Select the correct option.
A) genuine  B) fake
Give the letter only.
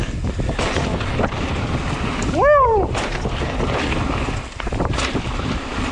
A